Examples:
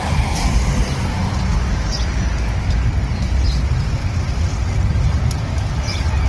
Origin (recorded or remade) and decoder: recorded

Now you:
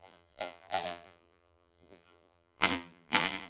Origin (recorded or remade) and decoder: remade, vocoder, BigVGAN v2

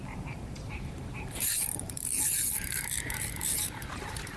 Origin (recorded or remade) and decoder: remade, vocoder, BigVGAN v2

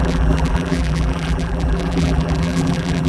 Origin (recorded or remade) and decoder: remade, vocoder, BigVGAN v2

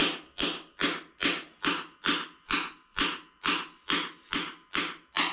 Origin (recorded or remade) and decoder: recorded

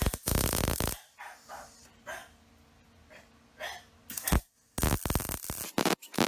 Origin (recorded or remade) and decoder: recorded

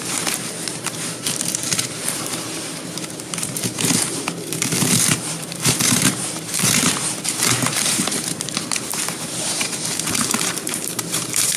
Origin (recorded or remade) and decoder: remade, vocoder, BigVGAN v2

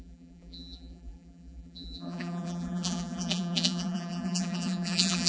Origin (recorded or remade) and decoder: remade, vocoder, BigVGAN v2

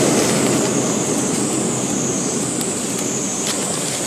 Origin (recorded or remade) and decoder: recorded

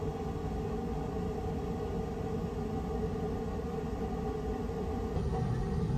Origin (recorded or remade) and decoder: recorded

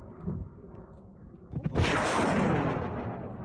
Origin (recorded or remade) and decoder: recorded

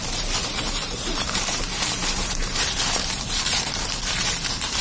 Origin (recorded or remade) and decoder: remade, vocoder, BigVGAN v2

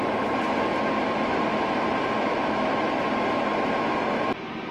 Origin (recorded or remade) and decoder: remade, vocoder, BigVGAN v2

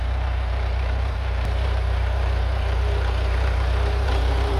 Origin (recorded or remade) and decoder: remade, vocoder, BigVGAN v2